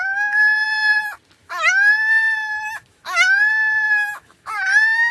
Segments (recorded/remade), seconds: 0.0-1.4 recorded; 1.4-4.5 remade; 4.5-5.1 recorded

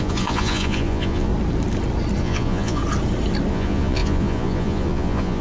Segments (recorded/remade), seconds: 0.0-1.3 remade; 1.3-2.2 recorded; 2.2-2.8 remade; 2.8-3.5 recorded; 3.5-5.4 remade

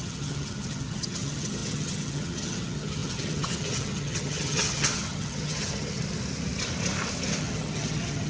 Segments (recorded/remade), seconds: 0.0-6.0 remade; 6.0-7.4 recorded; 7.4-8.3 remade

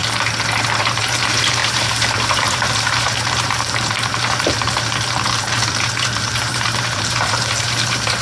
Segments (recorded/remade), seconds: 0.0-0.8 recorded; 0.8-8.2 remade